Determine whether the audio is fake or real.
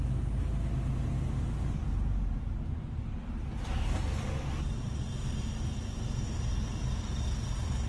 real